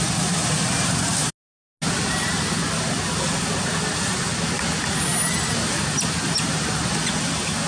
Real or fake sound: real